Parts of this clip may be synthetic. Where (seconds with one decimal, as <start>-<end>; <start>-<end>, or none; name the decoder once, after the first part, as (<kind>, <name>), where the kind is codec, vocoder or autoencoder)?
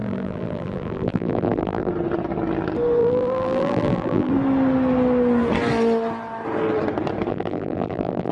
0.0-1.9 (vocoder, BigVGAN v2); 3.0-4.3; 7.3-8.3